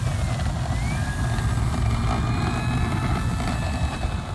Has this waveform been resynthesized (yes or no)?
no